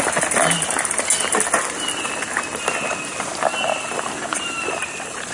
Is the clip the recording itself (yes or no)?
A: yes